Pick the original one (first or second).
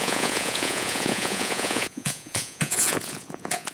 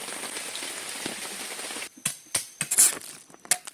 second